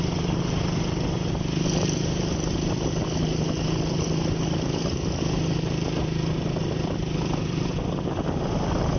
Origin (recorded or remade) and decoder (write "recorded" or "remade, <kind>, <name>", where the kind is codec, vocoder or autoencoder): recorded